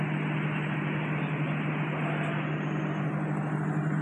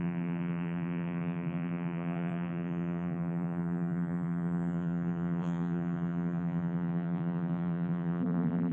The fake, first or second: second